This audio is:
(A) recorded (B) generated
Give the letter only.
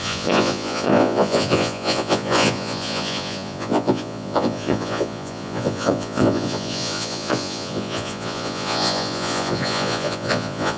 B